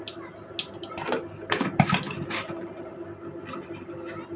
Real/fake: real